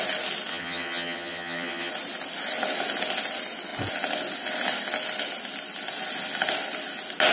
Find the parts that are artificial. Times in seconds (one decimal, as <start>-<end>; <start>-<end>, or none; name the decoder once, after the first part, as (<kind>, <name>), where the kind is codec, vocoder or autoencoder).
0.5-1.9 (vocoder, HiFi-GAN)